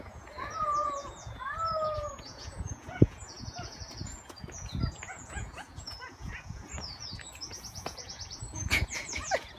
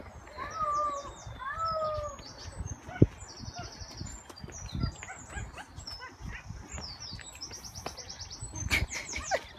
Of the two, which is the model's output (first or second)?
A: first